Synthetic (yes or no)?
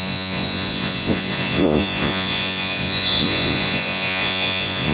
yes